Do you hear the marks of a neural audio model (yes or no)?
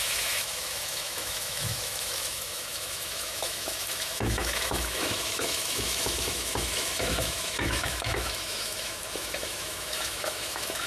yes